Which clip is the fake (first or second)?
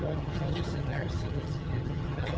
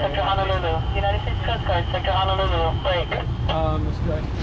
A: first